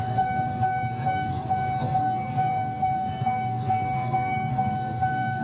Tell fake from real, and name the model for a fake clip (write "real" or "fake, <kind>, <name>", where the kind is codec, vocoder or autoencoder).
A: fake, codec, SNAC